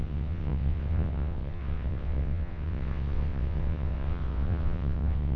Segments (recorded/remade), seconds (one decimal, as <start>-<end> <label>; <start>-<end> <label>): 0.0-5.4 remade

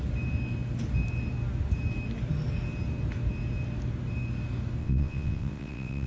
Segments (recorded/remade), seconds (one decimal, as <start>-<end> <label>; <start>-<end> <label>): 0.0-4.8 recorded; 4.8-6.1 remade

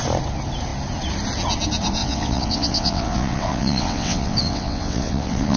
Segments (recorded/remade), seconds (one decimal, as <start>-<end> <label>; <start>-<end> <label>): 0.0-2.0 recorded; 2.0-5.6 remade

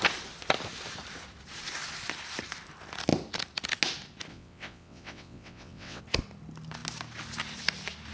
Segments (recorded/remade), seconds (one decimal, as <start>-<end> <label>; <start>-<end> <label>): 0.0-4.3 recorded; 4.3-6.0 remade; 6.0-8.1 recorded

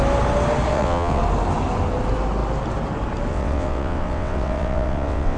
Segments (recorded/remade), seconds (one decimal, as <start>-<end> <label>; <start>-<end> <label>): 0.0-0.7 recorded; 0.7-1.2 remade; 1.2-3.3 recorded; 3.3-5.4 remade